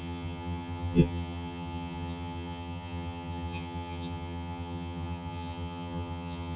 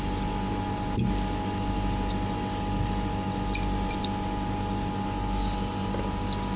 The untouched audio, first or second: second